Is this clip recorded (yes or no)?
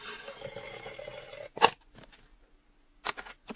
yes